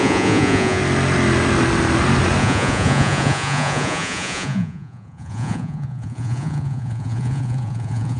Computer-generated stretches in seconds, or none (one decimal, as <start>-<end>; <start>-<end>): 0.0-0.8; 2.4-8.2